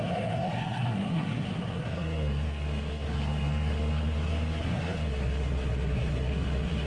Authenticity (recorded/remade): remade